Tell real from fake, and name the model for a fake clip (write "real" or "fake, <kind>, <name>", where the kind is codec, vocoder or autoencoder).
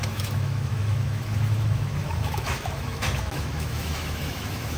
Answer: fake, autoencoder, DAC-VAE